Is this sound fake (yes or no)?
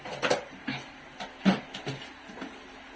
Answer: no